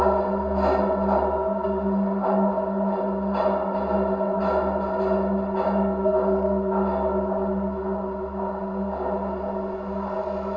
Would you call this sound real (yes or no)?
yes